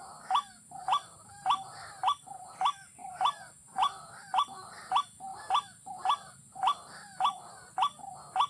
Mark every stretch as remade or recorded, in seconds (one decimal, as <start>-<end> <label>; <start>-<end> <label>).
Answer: 0.0-3.0 recorded; 3.0-4.1 remade; 4.1-5.3 recorded; 5.3-6.0 remade; 6.0-8.5 recorded